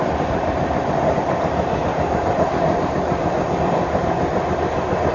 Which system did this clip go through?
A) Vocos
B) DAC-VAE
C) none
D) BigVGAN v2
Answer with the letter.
C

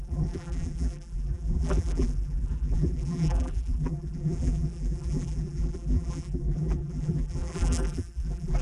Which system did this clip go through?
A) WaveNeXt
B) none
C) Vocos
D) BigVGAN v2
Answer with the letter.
D